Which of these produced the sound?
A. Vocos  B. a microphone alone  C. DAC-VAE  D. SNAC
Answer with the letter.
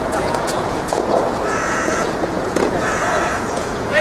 A